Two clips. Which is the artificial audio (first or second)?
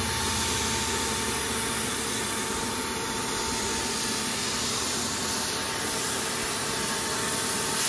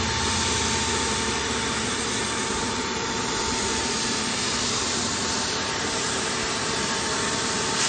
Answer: second